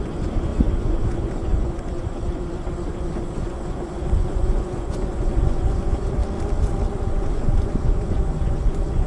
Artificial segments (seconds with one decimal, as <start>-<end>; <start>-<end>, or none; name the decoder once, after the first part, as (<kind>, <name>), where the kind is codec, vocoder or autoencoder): 0.0-6.2 (vocoder, Vocos); 7.0-9.1